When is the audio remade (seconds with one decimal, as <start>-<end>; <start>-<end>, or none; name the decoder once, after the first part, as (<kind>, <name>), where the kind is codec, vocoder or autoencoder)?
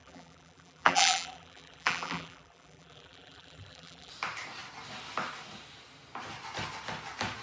0.0-4.1 (vocoder, BigVGAN v2)